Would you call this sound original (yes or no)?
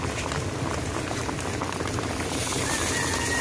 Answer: yes